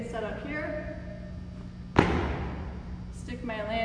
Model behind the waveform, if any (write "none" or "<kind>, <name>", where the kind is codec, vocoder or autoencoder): none